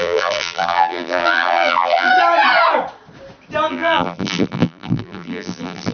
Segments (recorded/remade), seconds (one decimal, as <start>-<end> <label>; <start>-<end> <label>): 0.0-2.1 remade; 2.1-3.7 recorded; 3.7-5.9 remade